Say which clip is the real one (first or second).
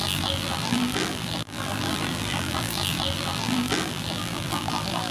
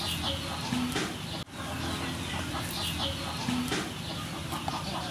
second